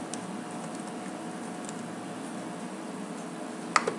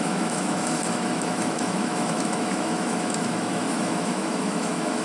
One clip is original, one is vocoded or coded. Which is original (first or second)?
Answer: first